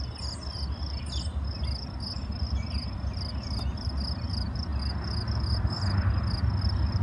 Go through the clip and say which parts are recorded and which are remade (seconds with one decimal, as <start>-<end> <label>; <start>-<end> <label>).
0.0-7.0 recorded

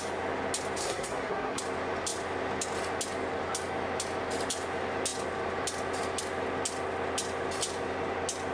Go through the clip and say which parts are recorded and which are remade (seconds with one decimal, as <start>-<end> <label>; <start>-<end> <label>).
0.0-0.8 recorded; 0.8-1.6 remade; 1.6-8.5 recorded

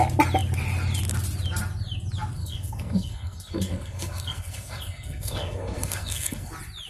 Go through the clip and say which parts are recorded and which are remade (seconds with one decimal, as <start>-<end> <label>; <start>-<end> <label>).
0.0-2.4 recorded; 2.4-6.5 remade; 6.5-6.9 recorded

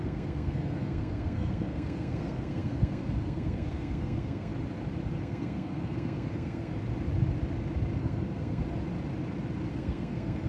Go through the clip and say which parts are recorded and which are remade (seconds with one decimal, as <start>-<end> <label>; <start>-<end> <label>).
0.0-4.5 remade; 4.5-5.2 recorded; 5.2-6.7 remade; 6.7-8.0 recorded; 8.0-8.6 remade; 8.6-9.7 recorded; 9.7-10.5 remade

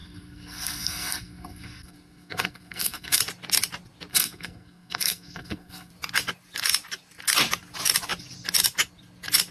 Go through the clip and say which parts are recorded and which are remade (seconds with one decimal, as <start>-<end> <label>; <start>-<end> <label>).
0.0-3.2 remade; 3.2-4.1 recorded; 4.1-5.9 remade; 5.9-9.5 recorded

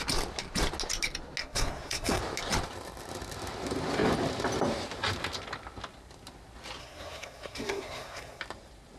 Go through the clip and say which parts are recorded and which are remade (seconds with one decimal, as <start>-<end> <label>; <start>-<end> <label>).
0.0-1.4 recorded; 1.4-2.2 remade; 2.2-6.8 recorded; 6.8-8.4 remade; 8.4-9.0 recorded